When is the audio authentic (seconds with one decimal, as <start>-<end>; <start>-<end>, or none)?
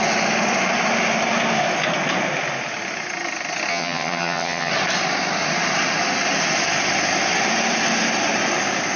0.0-3.7; 4.7-9.0